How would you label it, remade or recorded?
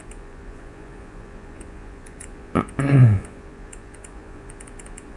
remade